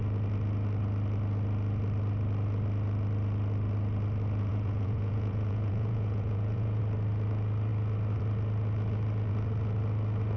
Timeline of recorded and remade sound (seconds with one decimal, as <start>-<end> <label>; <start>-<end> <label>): 0.0-4.5 recorded; 4.5-6.8 remade; 6.8-10.4 recorded